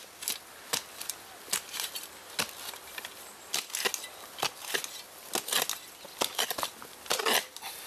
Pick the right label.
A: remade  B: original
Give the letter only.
B